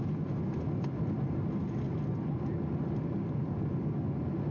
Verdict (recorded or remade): recorded